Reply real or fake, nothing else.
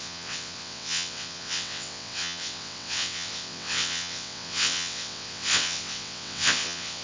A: fake